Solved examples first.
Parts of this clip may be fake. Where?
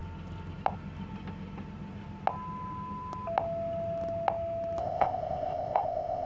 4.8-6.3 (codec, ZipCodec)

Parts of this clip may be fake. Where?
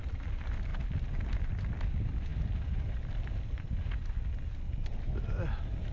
none